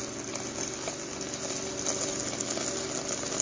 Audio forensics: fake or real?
real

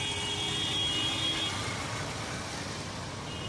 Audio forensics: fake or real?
real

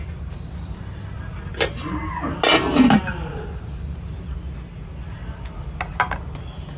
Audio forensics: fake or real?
real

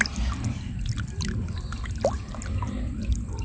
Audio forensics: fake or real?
real